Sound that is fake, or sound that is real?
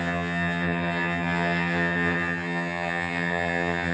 fake